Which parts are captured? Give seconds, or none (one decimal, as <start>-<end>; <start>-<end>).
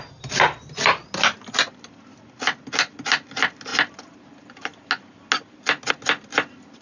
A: 0.0-6.8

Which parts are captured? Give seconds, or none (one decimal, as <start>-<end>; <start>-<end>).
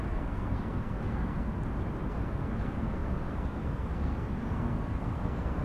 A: 1.5-2.1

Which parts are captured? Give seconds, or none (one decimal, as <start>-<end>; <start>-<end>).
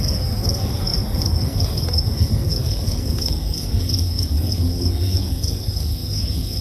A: none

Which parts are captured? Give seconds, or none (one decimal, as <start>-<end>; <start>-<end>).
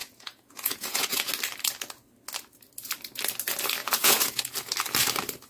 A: 1.3-3.8; 4.4-5.5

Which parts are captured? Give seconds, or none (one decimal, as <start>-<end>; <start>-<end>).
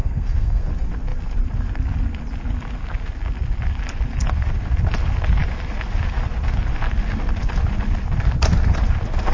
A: 0.7-9.3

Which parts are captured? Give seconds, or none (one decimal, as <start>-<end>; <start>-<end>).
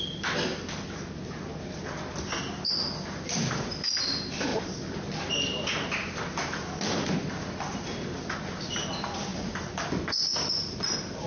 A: 0.0-11.3